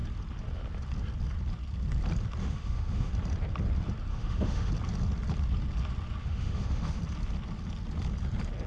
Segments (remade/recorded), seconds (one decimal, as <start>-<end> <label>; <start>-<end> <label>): 0.0-2.4 recorded; 2.4-3.1 remade; 3.1-4.1 recorded; 4.1-4.7 remade; 4.7-6.2 recorded; 6.2-7.0 remade; 7.0-8.7 recorded